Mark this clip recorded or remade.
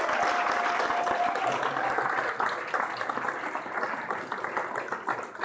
recorded